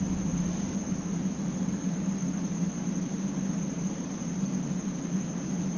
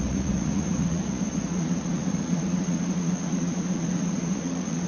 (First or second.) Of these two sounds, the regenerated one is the second